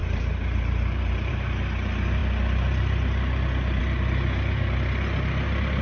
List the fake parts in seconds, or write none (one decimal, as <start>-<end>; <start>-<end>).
0.0-1.3